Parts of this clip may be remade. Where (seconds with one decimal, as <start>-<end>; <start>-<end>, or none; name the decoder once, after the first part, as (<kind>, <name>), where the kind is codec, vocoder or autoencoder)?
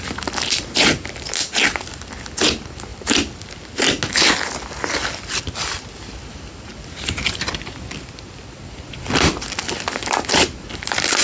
2.9-3.4 (vocoder, BigVGAN v2); 6.7-8.6